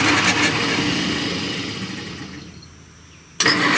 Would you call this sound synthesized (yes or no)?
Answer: no